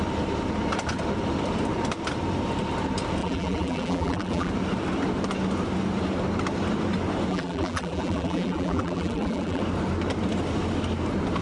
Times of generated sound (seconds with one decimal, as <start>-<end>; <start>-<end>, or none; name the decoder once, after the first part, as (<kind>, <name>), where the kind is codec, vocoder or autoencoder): 3.2-4.5 (vocoder, BigVGAN v2); 7.3-9.6

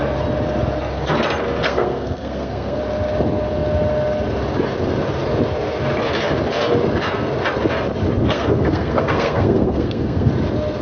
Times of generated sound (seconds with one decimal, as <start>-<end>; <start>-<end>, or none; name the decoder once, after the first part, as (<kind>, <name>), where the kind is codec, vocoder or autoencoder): 1.6-2.8 (codec, SNAC); 8.2-10.3

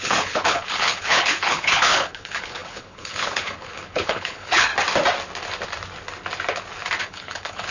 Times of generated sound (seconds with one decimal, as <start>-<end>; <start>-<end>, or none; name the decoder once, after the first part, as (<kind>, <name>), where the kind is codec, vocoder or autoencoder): 0.0-4.7 (codec, HILCodec); 7.0-7.7

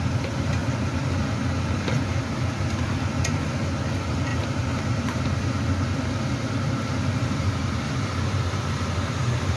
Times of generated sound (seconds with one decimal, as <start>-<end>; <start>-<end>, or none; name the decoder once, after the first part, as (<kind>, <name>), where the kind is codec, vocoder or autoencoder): 0.6-1.1 (vocoder, BigVGAN v2); 4.3-4.8

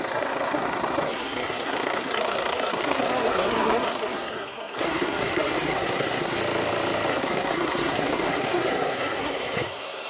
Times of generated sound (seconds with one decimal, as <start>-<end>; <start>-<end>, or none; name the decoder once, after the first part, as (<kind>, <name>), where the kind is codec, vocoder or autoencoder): 0.0-6.4 (codec, SNAC); 7.1-10.1

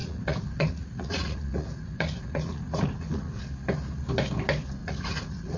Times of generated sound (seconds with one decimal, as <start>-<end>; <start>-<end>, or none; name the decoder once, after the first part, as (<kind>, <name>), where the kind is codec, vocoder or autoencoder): 0.0-3.4 (vocoder, Vocos); 4.8-5.6